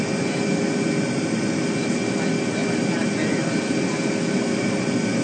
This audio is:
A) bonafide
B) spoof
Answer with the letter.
A